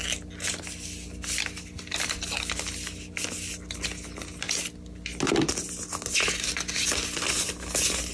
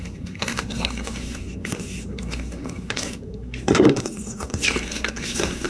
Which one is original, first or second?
first